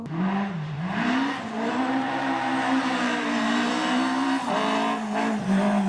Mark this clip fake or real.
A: fake